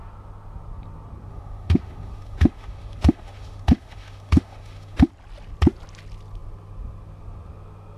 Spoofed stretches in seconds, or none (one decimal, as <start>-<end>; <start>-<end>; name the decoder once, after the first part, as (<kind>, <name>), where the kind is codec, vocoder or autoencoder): 1.3-5.1 (autoencoder, DAC-VAE)